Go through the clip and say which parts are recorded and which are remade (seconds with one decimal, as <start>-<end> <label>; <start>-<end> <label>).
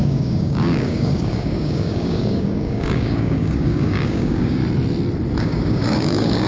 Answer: 0.0-4.6 remade; 4.6-5.4 recorded; 5.4-6.5 remade